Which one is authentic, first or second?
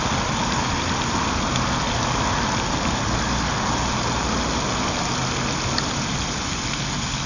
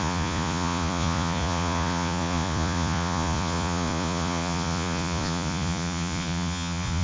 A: first